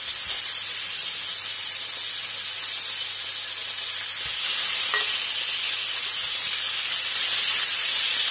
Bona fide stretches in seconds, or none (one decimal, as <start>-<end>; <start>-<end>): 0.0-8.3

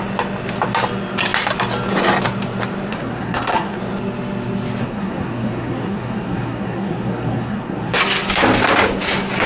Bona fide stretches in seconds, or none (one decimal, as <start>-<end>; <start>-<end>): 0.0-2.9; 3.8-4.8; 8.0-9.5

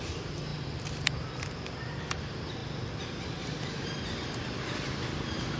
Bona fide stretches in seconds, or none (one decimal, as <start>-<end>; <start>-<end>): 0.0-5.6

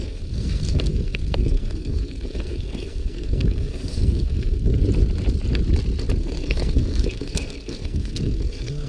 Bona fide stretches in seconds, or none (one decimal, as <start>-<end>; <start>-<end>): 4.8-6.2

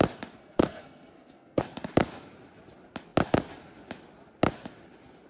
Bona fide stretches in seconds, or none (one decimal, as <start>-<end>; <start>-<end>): 0.0-0.4; 1.6-5.3

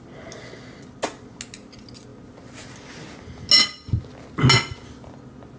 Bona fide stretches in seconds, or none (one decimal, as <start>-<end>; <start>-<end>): 0.0-5.6

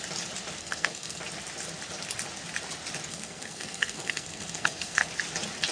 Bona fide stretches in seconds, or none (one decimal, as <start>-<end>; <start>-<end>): 0.0-0.6; 1.2-3.1; 5.1-5.7